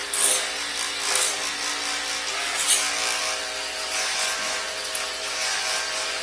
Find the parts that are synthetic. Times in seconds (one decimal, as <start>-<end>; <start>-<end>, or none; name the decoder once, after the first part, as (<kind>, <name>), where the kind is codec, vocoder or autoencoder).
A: 3.7-6.2 (vocoder, Vocos)